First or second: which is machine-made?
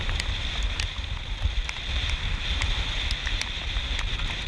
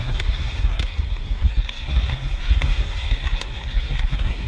second